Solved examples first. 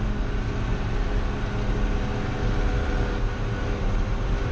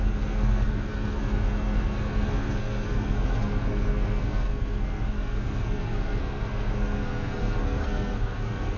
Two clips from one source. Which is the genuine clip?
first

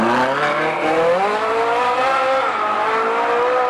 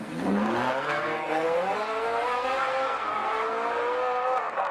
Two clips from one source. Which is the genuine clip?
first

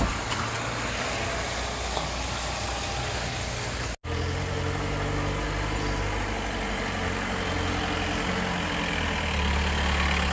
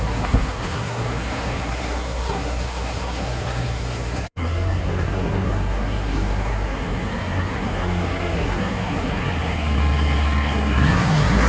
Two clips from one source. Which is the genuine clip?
first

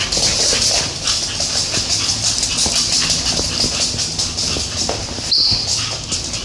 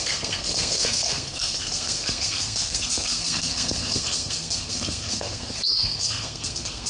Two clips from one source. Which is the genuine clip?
first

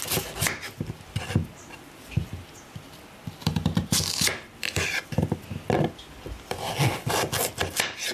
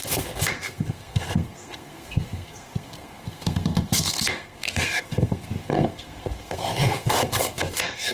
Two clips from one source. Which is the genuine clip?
first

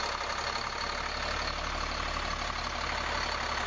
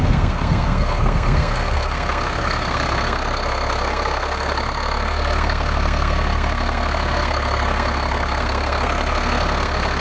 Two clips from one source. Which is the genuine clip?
first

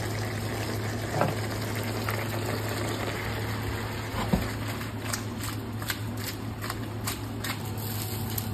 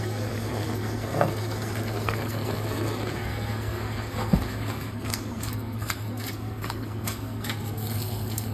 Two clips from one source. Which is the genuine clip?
first